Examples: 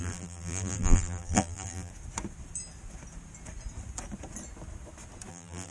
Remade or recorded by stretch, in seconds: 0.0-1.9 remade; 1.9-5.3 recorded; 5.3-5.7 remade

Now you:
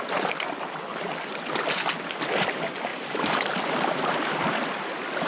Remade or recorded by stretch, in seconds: 0.0-0.9 recorded; 0.9-1.6 remade; 1.6-2.9 recorded; 2.9-5.3 remade

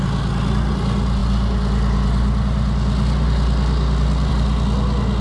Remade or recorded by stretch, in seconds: 0.0-5.2 recorded

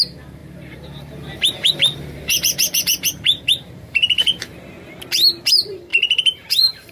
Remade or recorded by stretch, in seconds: 0.0-4.5 remade; 4.5-5.5 recorded; 5.5-6.9 remade